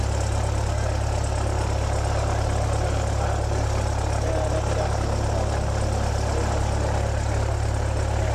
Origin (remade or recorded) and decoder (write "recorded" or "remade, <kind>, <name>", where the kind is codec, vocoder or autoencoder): recorded